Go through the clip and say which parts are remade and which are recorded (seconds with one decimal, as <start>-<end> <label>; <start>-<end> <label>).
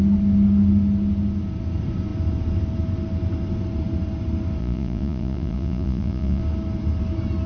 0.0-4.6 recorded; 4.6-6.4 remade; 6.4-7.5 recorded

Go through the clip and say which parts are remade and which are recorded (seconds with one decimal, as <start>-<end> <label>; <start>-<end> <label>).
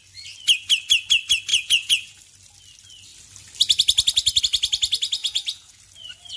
0.0-1.5 recorded; 1.5-2.2 remade; 2.2-5.2 recorded; 5.2-5.8 remade; 5.8-6.4 recorded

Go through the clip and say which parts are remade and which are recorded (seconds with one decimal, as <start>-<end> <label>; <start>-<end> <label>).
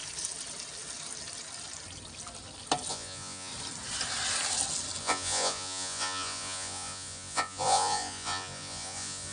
0.0-2.9 recorded; 2.9-3.5 remade; 3.5-5.0 recorded; 5.0-9.3 remade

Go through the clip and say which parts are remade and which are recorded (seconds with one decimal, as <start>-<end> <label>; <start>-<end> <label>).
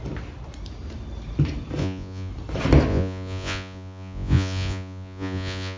0.0-1.8 recorded; 1.8-2.3 remade; 2.3-2.9 recorded; 2.9-5.8 remade